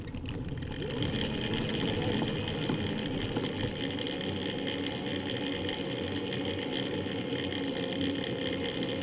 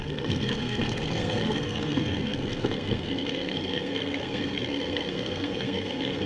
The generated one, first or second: second